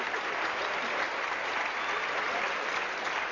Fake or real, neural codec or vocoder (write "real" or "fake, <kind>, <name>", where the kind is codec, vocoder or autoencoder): real